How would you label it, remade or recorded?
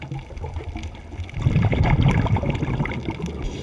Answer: recorded